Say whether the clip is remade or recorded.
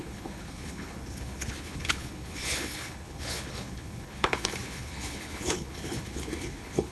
remade